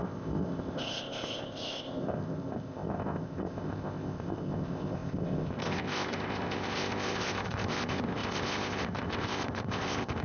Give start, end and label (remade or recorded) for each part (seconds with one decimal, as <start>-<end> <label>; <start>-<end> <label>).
0.0-10.2 remade